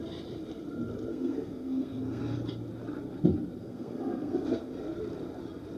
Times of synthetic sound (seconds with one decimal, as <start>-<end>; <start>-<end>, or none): 1.1-2.2; 3.6-4.7